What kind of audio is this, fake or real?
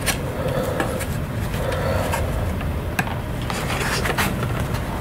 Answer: real